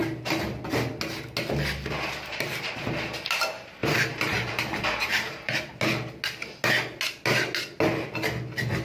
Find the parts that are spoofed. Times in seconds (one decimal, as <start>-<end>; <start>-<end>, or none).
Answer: 3.8-5.8